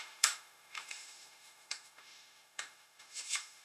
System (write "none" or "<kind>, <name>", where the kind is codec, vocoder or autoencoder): autoencoder, DAC-VAE